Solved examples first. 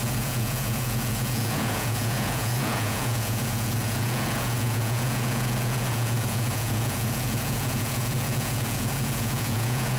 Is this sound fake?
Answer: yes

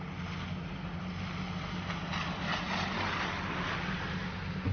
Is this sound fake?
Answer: no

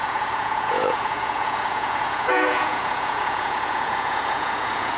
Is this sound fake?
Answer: yes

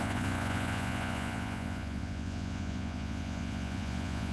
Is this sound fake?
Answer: yes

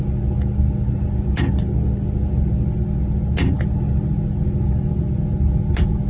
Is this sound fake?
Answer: no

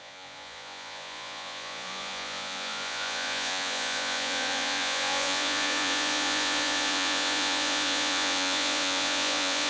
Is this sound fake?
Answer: yes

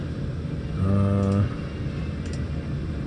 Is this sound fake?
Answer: no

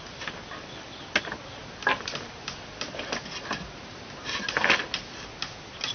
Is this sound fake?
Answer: no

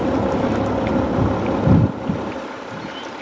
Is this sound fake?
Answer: no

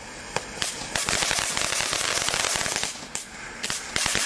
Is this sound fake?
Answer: no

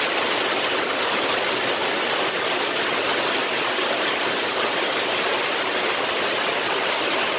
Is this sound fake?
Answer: no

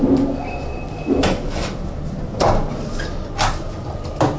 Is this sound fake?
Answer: no